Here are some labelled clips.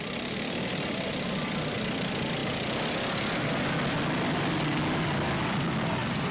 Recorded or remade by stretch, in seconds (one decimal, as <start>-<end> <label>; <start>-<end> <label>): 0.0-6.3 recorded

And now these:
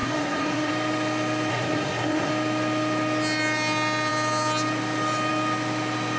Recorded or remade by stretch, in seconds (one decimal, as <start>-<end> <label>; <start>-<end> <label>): 0.0-0.7 remade; 0.7-1.5 recorded; 1.5-2.3 remade; 2.3-6.2 recorded

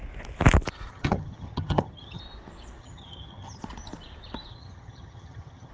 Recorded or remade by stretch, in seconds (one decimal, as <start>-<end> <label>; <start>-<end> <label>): 0.0-0.9 recorded; 0.9-2.2 remade; 2.2-2.8 recorded; 2.8-3.6 remade; 3.6-4.5 recorded; 4.5-5.7 remade

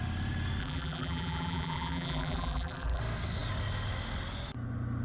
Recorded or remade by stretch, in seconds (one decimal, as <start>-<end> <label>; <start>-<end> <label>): 0.0-0.6 recorded; 0.6-3.0 remade; 3.0-5.0 recorded

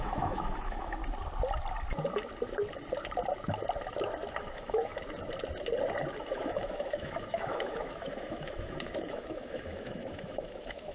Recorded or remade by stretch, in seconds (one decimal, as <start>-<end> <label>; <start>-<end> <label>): 0.0-1.0 remade; 1.0-4.4 recorded; 4.4-4.9 remade; 4.9-6.2 recorded; 6.2-10.9 remade